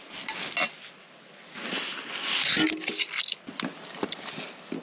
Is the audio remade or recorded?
recorded